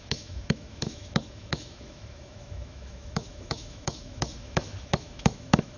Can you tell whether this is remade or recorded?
remade